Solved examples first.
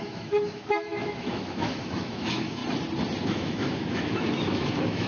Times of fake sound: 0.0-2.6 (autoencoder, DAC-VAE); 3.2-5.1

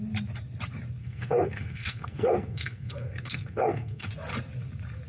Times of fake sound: 1.0-4.1 (codec, SNAC)

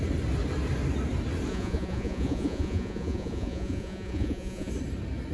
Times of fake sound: 1.5-4.7 (vocoder, Vocos)

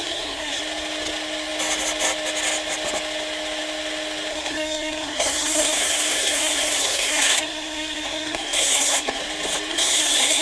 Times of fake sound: 0.0-0.6 (codec, SNAC); 4.3-9.2; 9.7-10.4

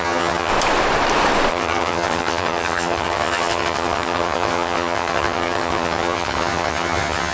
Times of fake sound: 0.0-0.5 (vocoder, HiFi-GAN); 1.5-7.3

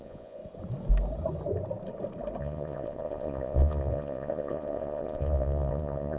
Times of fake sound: 0.0-0.4 (vocoder, Vocos); 2.4-6.2